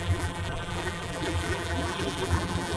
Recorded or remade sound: remade